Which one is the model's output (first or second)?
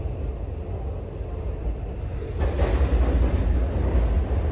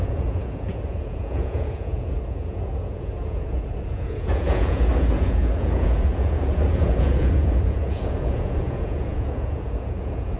second